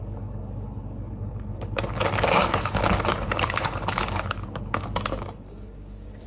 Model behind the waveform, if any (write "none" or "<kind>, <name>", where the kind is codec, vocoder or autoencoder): codec, DAC